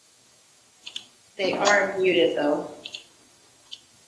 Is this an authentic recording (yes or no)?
no